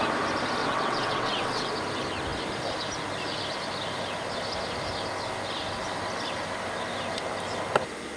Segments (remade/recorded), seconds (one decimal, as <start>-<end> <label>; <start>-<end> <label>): 0.0-0.6 recorded; 0.6-1.7 remade; 1.7-8.2 recorded